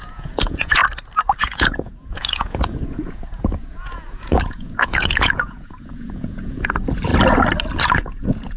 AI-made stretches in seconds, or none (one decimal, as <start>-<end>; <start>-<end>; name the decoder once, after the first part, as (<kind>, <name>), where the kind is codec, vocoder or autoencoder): 0.0-0.8 (vocoder, Vocos); 1.4-7.1; 7.8-8.6